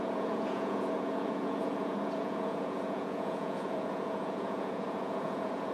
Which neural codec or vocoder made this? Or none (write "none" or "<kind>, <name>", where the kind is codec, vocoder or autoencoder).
vocoder, Vocos